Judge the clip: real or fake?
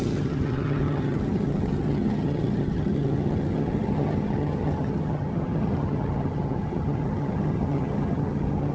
fake